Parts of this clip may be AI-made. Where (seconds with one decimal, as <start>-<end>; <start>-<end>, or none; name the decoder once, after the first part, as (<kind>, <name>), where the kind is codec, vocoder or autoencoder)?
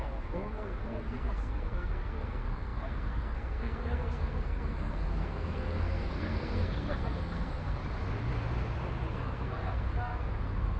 0.0-7.8 (codec, SNAC); 9.1-10.8